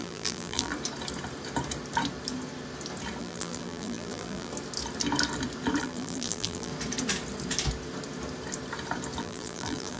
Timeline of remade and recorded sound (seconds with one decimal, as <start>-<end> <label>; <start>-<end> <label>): 0.0-0.7 remade; 0.7-3.2 recorded; 3.2-4.5 remade; 4.5-5.8 recorded; 5.8-6.7 remade; 6.7-9.2 recorded; 9.2-10.0 remade